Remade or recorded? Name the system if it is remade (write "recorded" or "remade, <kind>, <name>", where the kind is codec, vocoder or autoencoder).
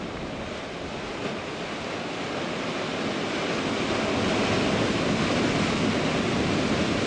recorded